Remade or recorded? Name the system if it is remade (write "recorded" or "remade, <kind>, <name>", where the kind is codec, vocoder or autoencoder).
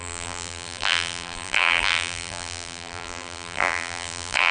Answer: remade, vocoder, BigVGAN v2